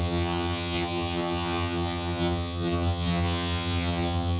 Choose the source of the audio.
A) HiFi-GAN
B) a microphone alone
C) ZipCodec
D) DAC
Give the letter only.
A